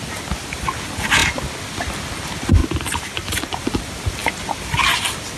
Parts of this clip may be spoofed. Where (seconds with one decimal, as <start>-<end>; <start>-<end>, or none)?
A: 2.6-3.6